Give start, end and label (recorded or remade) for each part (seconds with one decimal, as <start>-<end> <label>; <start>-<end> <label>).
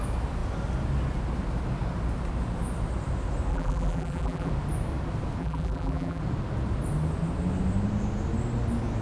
0.0-3.5 recorded; 3.5-4.5 remade; 4.5-5.4 recorded; 5.4-6.2 remade; 6.2-9.0 recorded